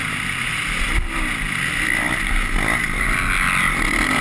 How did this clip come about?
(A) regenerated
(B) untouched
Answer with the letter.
B